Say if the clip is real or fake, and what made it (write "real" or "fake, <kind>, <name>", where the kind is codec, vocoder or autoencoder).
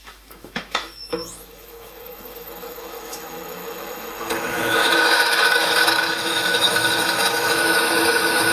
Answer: fake, autoencoder, DAC-VAE